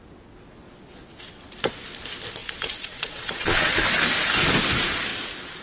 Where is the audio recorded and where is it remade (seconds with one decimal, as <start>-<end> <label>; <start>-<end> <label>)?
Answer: 0.0-2.4 recorded; 2.4-3.8 remade; 3.8-5.6 recorded